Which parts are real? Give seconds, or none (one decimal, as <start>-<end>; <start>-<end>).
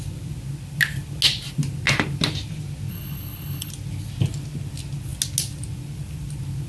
0.0-2.9; 3.7-6.7